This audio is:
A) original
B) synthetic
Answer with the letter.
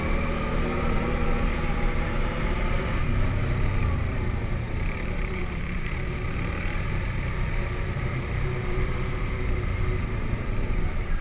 B